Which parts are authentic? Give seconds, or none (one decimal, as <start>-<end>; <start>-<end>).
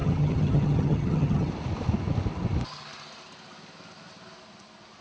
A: 1.5-5.0